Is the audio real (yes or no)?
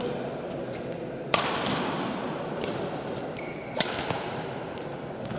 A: yes